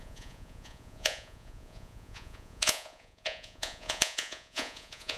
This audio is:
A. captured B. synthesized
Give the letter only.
B